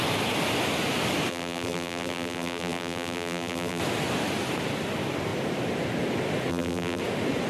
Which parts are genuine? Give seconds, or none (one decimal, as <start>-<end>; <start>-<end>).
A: 0.0-1.3; 3.8-6.5; 7.0-7.5